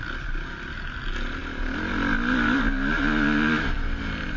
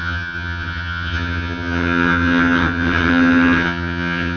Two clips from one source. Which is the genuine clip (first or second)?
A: first